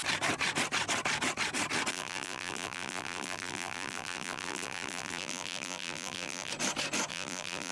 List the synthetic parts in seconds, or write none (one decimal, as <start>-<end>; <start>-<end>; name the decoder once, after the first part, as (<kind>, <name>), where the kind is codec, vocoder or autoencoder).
1.9-6.5 (vocoder, BigVGAN v2); 7.1-7.7